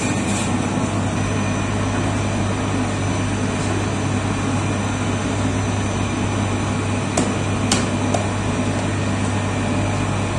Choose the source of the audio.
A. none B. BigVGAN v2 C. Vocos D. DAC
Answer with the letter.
A